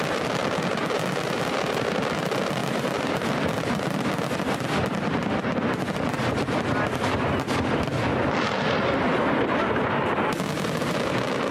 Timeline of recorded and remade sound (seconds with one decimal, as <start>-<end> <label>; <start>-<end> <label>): 0.0-11.5 recorded